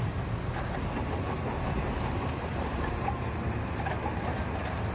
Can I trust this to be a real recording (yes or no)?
no